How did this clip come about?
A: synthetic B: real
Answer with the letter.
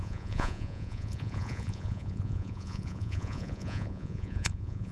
A